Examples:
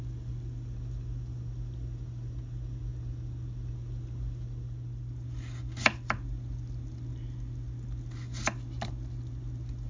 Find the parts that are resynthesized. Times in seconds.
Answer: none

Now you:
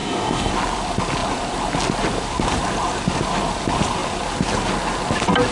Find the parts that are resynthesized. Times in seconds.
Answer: 0.0-0.5 (codec, DAC)

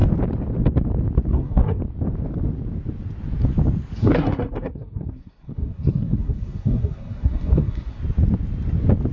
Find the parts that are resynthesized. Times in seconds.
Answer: 1.3-1.8 (codec, SNAC); 4.0-8.0

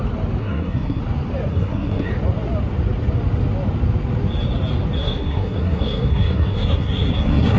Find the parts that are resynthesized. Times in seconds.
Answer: 0.4-1.0 (codec, SNAC); 1.5-2.1; 5.0-7.6

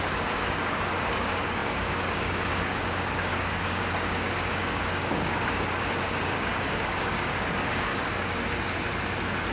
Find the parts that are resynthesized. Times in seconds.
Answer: 0.0-7.9 (codec, DAC)

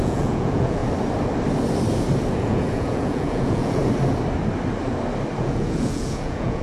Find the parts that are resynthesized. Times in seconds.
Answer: 0.0-0.8 (vocoder, Vocos); 2.3-3.8; 5.4-6.6